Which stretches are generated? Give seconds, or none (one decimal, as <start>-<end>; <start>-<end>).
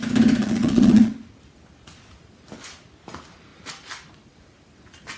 0.4-1.1